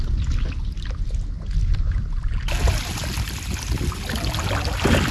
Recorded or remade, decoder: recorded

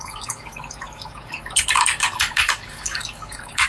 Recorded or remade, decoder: remade, codec, DAC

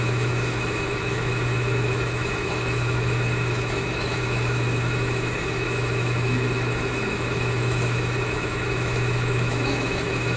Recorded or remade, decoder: remade, autoencoder, DAC-VAE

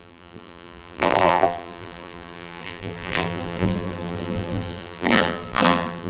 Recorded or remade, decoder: remade, vocoder, BigVGAN v2